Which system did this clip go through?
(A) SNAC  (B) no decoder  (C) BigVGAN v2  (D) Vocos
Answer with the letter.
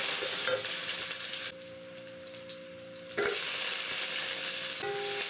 B